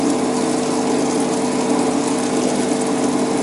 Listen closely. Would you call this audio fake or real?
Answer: real